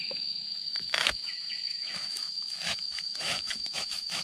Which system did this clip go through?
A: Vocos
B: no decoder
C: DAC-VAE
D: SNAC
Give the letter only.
C